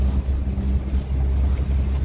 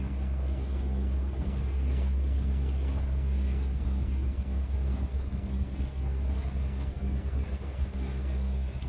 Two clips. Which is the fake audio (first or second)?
second